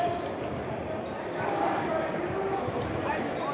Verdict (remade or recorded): remade